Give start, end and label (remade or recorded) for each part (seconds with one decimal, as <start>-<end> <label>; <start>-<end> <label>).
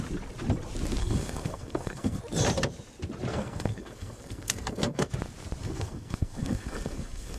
0.0-1.0 recorded; 1.0-2.2 remade; 2.2-3.3 recorded; 3.3-5.1 remade; 5.1-5.6 recorded; 5.6-7.4 remade